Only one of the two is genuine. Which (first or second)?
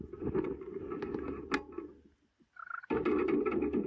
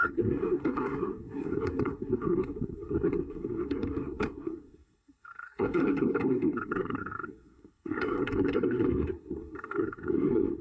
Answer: first